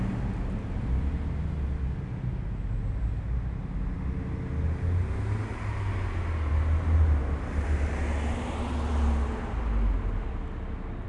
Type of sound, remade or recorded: recorded